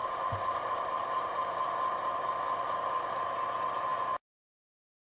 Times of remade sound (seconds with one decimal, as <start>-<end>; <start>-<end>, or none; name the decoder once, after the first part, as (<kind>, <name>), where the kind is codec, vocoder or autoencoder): none

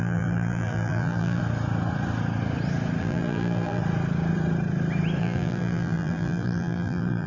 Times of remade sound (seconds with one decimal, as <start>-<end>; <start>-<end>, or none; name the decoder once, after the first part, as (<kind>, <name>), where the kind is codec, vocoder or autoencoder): 0.0-1.4 (vocoder, BigVGAN v2); 3.0-3.8; 5.2-7.3

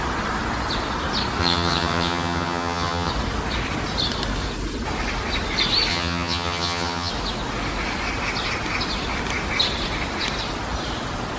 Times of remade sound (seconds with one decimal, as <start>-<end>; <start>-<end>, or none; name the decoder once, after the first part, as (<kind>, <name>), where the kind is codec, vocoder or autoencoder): 1.4-3.1 (vocoder, HiFi-GAN); 5.9-7.1

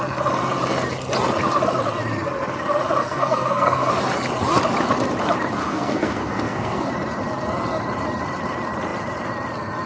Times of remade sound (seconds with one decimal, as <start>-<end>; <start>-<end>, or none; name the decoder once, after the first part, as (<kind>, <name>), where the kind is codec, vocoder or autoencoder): 3.0-3.9 (codec, SNAC); 5.6-6.9

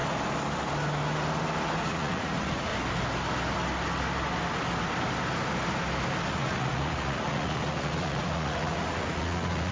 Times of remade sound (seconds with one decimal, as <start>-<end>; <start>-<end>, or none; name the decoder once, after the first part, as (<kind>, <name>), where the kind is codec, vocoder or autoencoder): 1.8-2.7 (vocoder, Vocos); 6.3-9.7

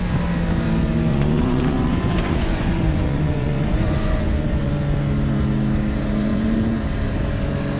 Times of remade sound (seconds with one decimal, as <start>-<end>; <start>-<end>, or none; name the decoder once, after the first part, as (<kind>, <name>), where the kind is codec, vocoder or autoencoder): 1.1-4.7 (vocoder, Vocos); 6.3-6.8

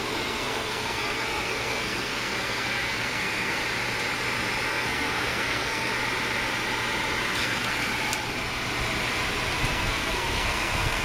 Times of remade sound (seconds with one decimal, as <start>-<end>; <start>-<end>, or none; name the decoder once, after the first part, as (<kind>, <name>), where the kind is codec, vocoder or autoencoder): 0.0-3.6 (codec, SNAC); 4.7-5.9; 7.2-7.9; 9.7-11.0